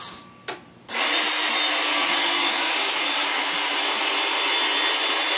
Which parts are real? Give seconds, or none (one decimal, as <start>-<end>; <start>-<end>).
0.0-1.9; 3.4-5.4